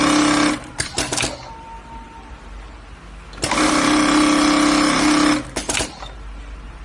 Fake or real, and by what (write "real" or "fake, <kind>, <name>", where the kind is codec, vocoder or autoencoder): real